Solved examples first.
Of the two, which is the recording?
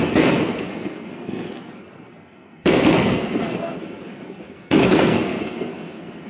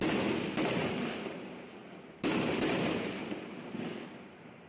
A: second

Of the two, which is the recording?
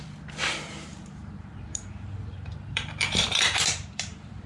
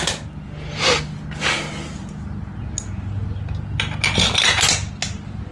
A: second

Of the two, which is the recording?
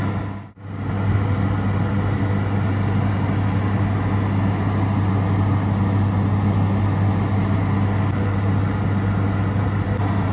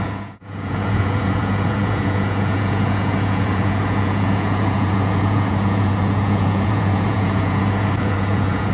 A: first